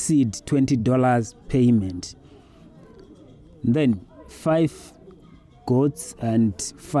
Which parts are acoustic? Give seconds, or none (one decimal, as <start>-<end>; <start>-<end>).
0.0-7.0